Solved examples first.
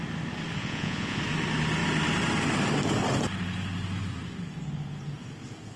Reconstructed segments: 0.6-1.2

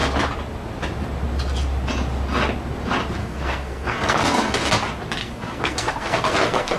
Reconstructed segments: 3.2-4.7; 5.2-6.8

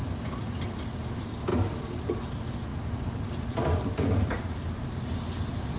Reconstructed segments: 0.0-0.6; 1.5-2.2; 2.7-5.1

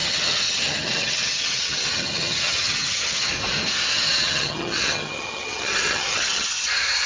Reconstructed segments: 0.0-3.3; 3.9-7.1

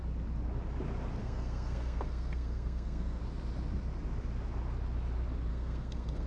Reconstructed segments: 1.2-3.2; 5.5-6.3